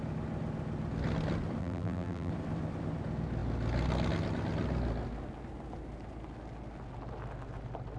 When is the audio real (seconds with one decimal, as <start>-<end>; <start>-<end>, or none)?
0.0-1.6; 2.3-8.0